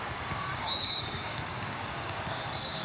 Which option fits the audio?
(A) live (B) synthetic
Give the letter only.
B